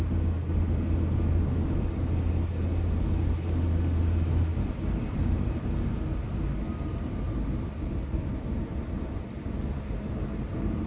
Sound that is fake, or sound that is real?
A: real